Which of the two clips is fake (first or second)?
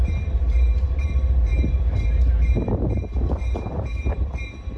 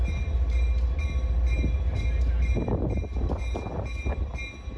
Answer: first